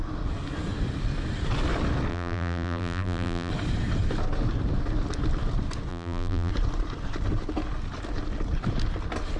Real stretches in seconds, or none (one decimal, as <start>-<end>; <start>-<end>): 0.0-2.1; 3.5-5.9; 6.5-9.4

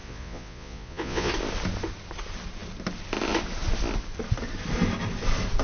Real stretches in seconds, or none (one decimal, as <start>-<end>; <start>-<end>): 1.3-5.6

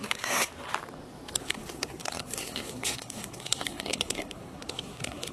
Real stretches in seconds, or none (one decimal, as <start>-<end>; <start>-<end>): 0.5-1.4

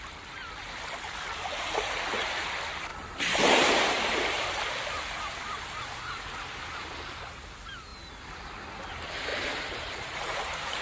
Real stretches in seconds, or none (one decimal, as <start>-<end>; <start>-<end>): 0.0-2.9; 4.5-9.3

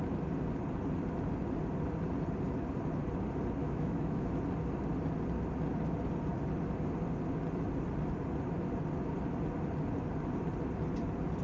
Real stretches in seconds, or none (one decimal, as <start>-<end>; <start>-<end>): 0.0-3.6; 4.4-11.4